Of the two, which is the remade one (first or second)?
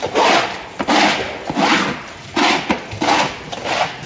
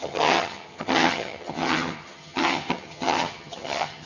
second